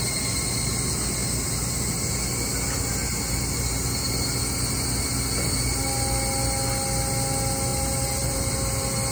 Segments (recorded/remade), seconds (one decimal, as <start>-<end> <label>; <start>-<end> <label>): 0.0-7.7 recorded; 7.7-8.5 remade; 8.5-9.1 recorded